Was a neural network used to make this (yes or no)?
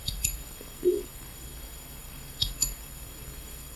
yes